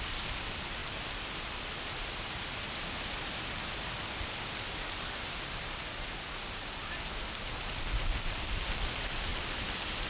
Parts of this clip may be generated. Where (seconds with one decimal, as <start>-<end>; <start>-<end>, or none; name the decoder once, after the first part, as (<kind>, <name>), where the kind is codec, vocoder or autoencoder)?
none